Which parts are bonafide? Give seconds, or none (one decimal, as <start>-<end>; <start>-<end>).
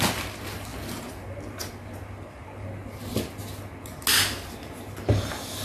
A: 0.0-5.6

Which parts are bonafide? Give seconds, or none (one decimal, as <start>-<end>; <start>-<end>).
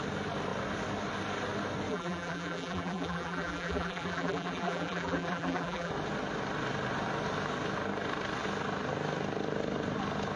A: 0.0-1.9; 5.9-10.4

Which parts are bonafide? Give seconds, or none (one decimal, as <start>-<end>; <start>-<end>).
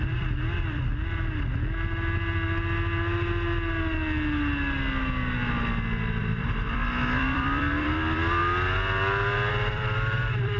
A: 0.9-6.2; 8.4-9.5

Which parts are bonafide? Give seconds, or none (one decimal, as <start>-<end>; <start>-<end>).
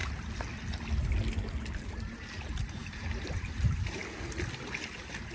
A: 0.0-1.6; 4.0-4.7